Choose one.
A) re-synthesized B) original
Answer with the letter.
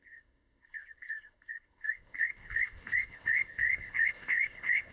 A